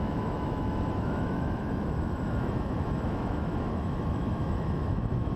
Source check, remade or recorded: remade